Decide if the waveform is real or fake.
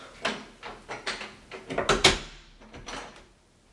real